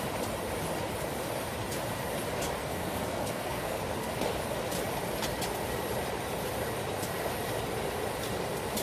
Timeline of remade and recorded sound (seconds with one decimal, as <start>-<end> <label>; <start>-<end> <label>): 0.0-2.6 recorded; 2.6-3.8 remade; 3.8-8.8 recorded